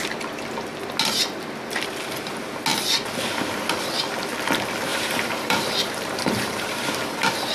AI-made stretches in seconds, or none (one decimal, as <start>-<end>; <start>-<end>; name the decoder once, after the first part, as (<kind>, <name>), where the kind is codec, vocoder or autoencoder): 4.9-6.9 (vocoder, BigVGAN v2)